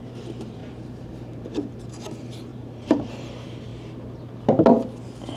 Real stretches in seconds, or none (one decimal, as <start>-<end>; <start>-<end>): 0.0-0.6; 1.9-2.5; 3.1-5.4